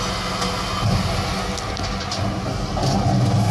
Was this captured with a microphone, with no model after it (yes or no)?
yes